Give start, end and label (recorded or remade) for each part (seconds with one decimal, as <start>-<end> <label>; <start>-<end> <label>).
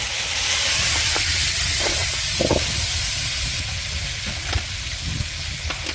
0.0-5.9 recorded